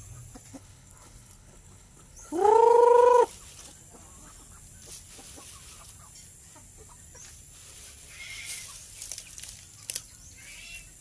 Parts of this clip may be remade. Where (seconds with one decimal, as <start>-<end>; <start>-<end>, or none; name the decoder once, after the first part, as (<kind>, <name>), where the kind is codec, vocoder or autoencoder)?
0.5-3.3 (codec, HILCodec)